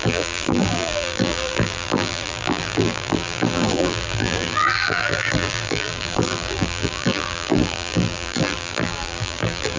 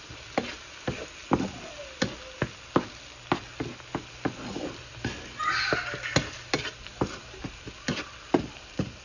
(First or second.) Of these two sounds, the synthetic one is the first